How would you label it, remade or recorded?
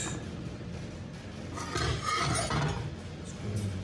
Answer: recorded